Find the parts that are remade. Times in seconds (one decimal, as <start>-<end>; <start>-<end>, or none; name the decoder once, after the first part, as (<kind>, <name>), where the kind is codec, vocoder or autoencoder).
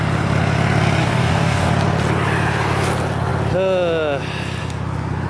1.0-1.7 (codec, DAC)